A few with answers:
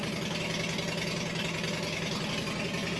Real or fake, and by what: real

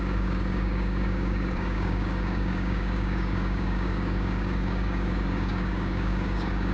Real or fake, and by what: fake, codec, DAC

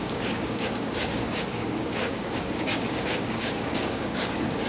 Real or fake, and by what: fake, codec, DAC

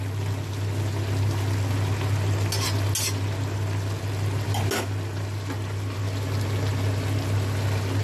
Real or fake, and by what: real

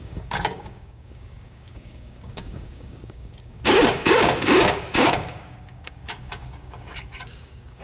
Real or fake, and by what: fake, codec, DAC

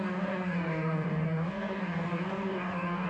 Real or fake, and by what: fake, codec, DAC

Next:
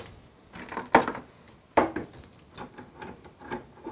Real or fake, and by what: real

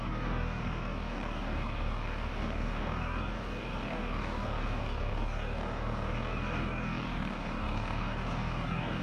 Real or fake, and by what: fake, codec, DAC